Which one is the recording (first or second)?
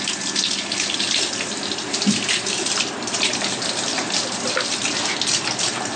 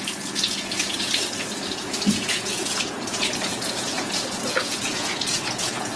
first